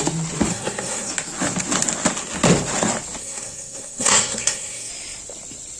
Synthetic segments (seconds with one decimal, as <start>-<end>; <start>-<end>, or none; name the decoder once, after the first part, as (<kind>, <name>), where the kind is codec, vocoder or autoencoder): 0.5-1.1 (codec, SNAC); 3.2-4.9

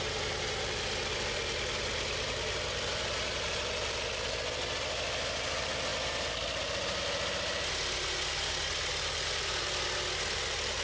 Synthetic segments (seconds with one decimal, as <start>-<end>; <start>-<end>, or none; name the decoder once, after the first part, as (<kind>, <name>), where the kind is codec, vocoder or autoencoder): none

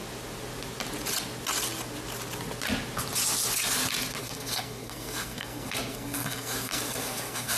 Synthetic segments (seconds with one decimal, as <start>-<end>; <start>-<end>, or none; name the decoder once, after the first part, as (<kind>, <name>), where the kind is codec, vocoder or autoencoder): 4.2-7.6 (codec, SNAC)

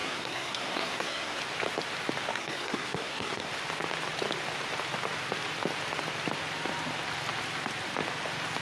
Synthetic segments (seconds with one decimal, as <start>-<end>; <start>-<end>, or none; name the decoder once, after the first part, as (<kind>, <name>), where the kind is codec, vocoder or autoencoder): 0.0-1.4 (codec, SNAC); 2.3-3.5